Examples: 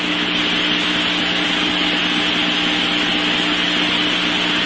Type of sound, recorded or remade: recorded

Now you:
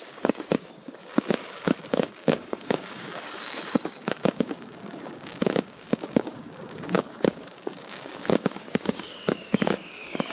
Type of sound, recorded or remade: remade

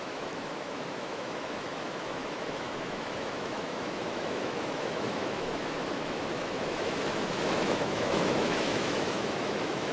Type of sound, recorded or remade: remade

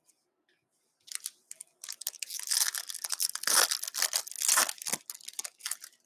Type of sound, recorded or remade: recorded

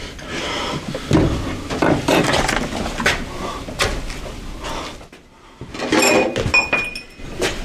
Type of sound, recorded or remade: recorded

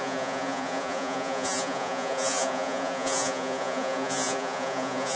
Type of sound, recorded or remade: remade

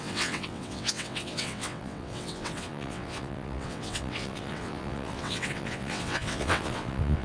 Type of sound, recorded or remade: remade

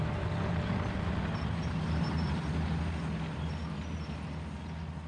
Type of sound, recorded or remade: recorded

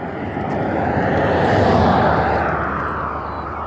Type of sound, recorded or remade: recorded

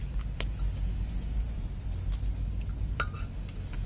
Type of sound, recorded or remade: recorded